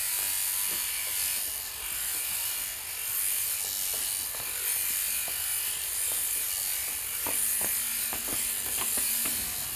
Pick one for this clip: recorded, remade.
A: recorded